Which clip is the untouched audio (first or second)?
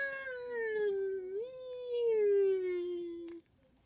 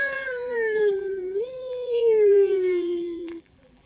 first